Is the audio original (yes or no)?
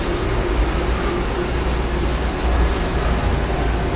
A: yes